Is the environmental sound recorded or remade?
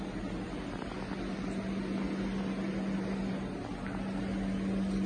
recorded